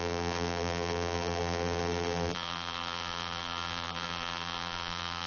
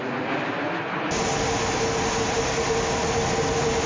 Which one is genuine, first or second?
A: second